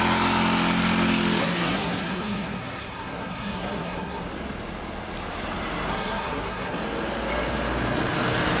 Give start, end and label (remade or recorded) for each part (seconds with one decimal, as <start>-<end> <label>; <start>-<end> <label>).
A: 0.0-1.4 recorded; 1.4-4.3 remade; 4.3-5.9 recorded; 5.9-6.8 remade; 6.8-8.6 recorded